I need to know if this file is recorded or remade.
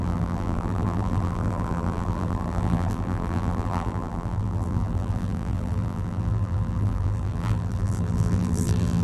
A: remade